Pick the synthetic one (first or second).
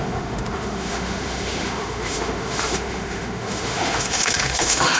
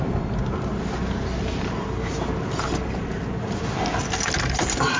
first